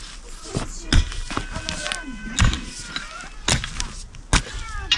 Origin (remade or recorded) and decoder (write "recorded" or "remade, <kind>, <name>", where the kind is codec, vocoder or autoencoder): recorded